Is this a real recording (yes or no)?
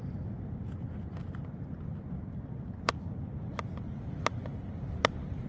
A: yes